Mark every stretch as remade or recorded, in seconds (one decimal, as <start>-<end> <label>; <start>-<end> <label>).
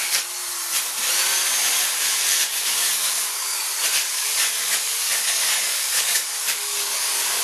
0.0-2.5 recorded; 2.5-3.6 remade; 3.6-4.0 recorded; 4.0-7.4 remade